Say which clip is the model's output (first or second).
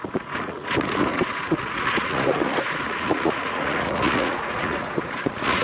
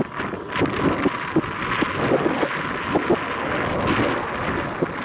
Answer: first